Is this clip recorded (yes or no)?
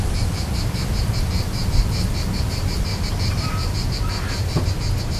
no